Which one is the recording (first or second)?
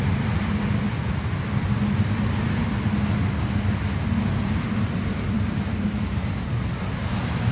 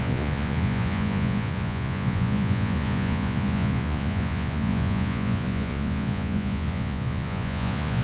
first